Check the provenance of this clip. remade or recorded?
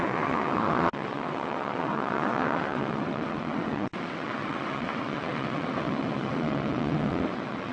remade